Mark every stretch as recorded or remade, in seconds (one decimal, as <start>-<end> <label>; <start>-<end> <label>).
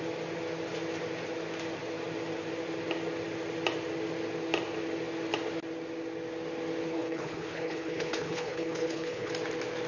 0.0-6.9 recorded; 6.9-9.3 remade; 9.3-9.9 recorded